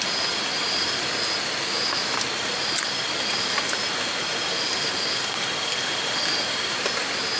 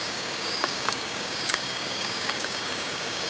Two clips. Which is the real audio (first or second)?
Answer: first